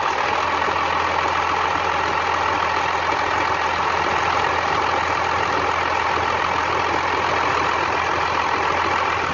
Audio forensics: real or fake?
real